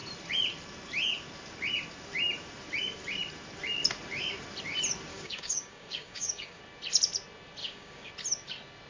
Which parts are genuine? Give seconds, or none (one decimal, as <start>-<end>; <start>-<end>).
0.0-5.1; 6.6-7.6; 8.1-8.9